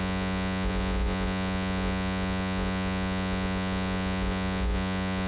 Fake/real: fake